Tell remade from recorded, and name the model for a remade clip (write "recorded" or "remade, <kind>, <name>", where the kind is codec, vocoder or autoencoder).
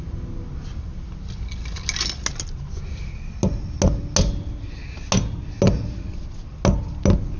recorded